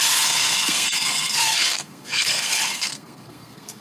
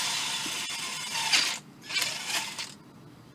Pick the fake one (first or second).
first